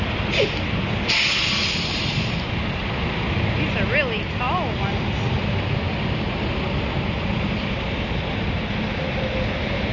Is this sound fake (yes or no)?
no